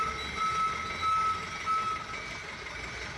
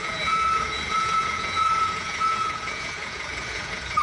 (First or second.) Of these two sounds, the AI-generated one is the second